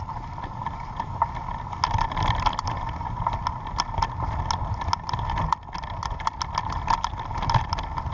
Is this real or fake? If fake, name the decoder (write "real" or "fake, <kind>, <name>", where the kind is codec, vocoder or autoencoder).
real